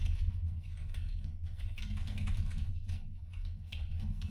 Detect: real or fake fake